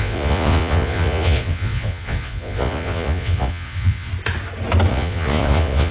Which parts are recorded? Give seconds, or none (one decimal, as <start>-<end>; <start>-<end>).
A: 4.1-4.9